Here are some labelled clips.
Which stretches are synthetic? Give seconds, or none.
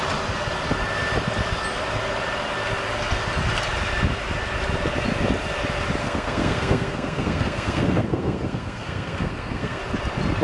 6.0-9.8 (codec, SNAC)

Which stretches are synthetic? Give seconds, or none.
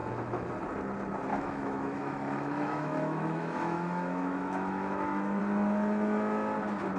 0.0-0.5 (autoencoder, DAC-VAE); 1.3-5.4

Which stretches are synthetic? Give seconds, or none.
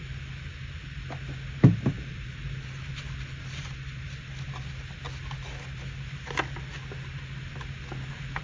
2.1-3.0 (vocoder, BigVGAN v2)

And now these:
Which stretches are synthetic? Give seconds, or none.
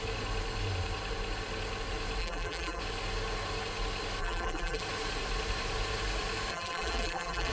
2.2-2.8 (vocoder, BigVGAN v2); 4.2-4.8; 6.5-7.5